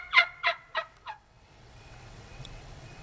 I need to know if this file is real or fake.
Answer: fake